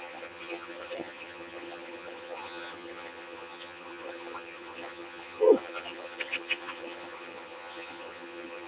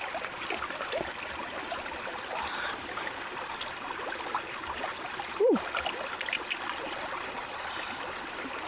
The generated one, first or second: first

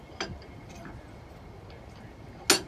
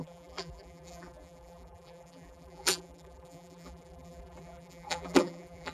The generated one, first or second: second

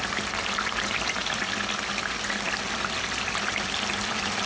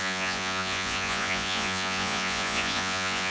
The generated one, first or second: second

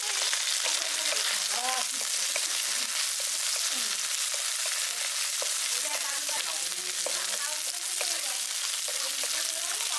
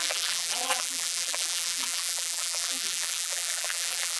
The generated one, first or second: second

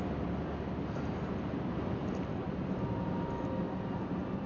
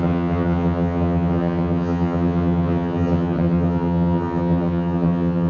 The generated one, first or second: second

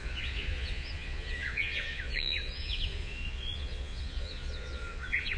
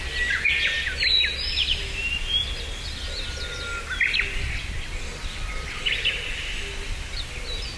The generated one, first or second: first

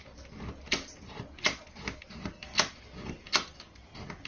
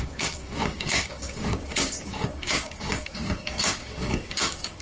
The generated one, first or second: second